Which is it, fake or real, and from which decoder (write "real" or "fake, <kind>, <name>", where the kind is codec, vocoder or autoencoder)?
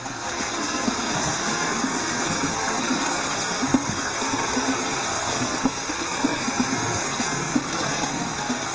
fake, codec, SNAC